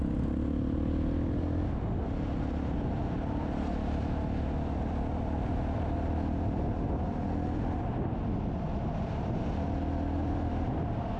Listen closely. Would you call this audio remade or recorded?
recorded